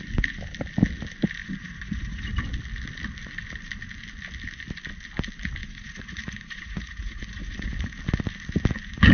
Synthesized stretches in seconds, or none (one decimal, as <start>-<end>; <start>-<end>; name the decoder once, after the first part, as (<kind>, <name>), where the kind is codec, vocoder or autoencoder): 1.4-2.4 (vocoder, Vocos); 5.6-8.0